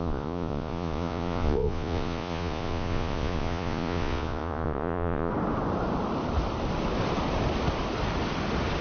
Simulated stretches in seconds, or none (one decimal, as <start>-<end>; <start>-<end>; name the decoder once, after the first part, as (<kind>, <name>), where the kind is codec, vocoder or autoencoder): 0.0-5.3 (vocoder, Vocos)